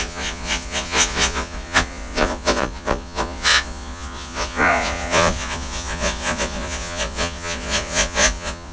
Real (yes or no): no